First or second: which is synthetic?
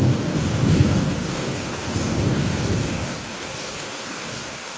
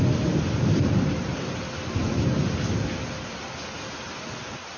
first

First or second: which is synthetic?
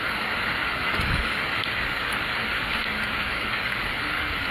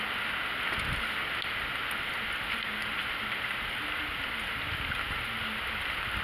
first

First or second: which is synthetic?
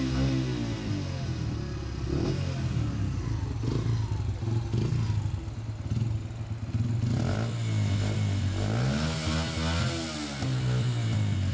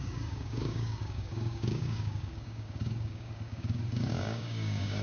second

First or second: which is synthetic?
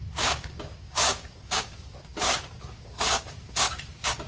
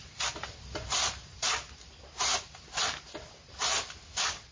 first